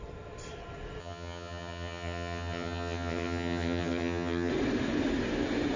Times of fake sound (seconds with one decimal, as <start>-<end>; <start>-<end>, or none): 1.0-4.5